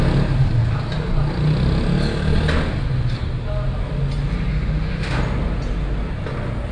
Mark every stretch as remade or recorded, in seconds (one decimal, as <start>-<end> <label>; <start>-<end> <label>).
0.0-4.5 recorded; 4.5-5.2 remade; 5.2-6.7 recorded